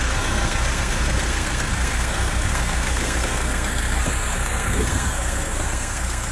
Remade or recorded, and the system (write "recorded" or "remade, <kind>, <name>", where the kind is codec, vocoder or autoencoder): remade, codec, SNAC